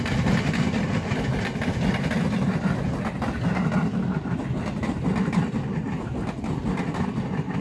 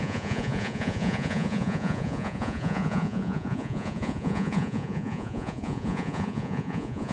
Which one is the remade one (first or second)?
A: second